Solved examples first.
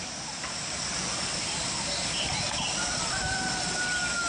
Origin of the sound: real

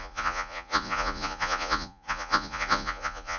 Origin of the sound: fake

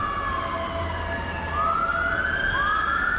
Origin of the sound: real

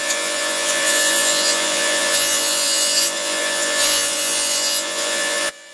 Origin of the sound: fake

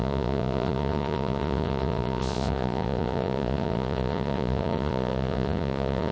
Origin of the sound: fake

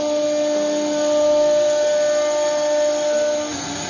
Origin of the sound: real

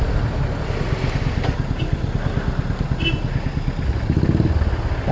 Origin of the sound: real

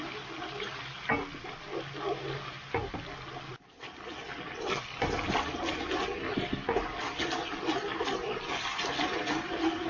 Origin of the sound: real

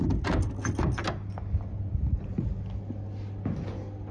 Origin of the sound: real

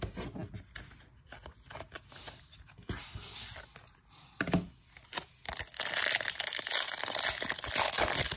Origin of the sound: real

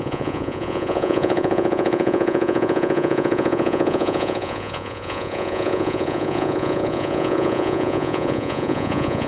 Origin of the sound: fake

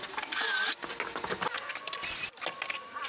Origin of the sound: real